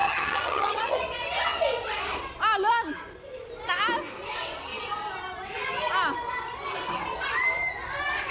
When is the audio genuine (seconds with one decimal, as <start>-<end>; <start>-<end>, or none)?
1.0-8.3

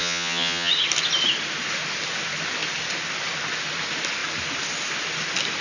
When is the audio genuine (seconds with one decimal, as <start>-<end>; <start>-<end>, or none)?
0.7-5.6

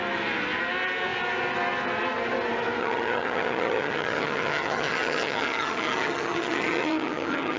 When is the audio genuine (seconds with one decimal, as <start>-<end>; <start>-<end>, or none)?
0.0-2.8

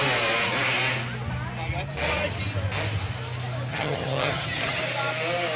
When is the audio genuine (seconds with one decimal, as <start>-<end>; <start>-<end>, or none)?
0.0-3.7; 4.8-5.6

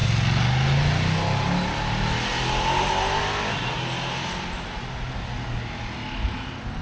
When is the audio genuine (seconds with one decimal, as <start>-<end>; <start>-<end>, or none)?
0.0-6.8

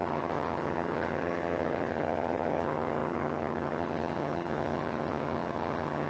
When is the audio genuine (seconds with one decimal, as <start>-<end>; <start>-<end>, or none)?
none

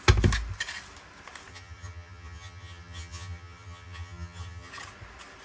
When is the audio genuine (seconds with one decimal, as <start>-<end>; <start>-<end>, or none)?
0.0-1.5; 4.7-5.4